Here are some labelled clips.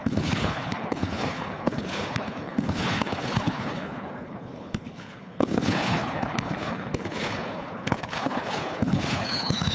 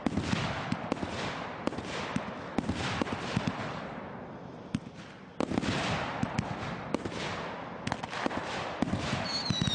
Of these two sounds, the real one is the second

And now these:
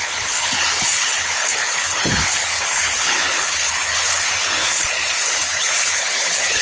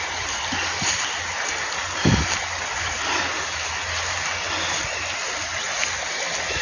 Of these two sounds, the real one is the second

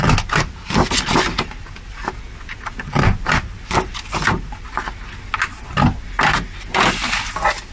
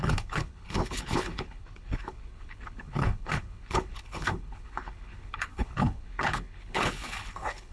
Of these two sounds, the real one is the first